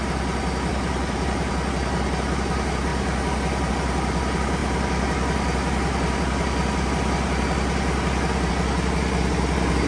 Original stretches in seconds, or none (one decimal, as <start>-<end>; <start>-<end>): 0.0-0.7; 1.5-9.9